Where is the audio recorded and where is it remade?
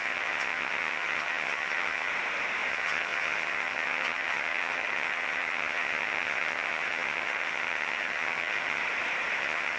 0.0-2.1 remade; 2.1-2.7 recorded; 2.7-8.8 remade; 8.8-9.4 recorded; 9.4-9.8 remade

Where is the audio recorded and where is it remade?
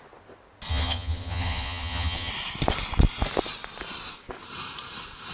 0.0-0.7 recorded; 0.7-2.3 remade; 2.3-5.3 recorded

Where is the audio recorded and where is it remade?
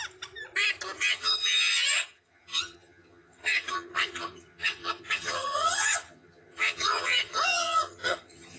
0.0-1.0 recorded; 1.0-8.6 remade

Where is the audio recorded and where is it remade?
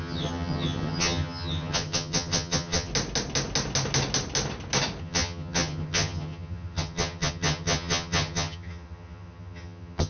0.0-2.9 remade; 2.9-5.0 recorded; 5.0-10.1 remade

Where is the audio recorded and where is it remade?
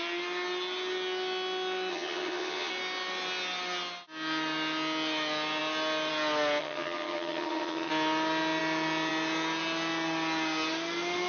0.0-1.9 recorded; 1.9-2.7 remade; 2.7-6.6 recorded; 6.6-7.9 remade; 7.9-11.3 recorded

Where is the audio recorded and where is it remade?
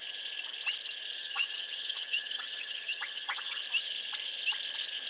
0.0-1.2 recorded; 1.2-3.6 remade; 3.6-5.1 recorded